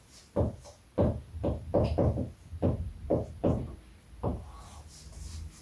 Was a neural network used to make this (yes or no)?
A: no